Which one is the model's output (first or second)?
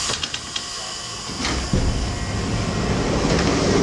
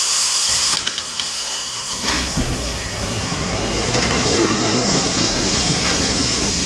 second